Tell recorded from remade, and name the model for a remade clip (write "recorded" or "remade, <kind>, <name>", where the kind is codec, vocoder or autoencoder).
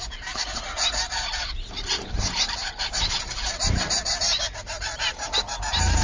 remade, vocoder, BigVGAN v2